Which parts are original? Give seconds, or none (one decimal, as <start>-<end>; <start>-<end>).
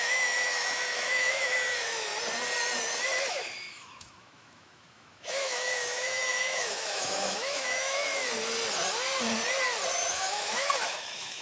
2.1-3.3; 8.2-10.1